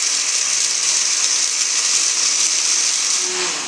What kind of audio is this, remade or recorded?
recorded